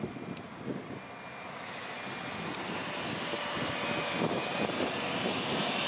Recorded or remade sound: recorded